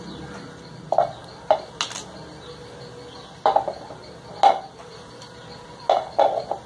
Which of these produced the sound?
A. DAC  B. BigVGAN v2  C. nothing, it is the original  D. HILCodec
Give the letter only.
C